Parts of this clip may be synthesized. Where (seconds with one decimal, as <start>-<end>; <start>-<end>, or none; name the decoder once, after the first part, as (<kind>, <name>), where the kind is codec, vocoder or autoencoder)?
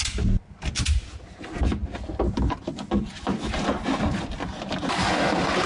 none